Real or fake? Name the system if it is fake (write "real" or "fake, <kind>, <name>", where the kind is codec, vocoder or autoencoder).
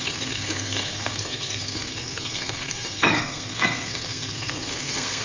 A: fake, codec, SNAC